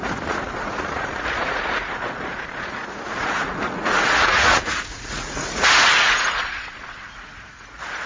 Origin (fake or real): fake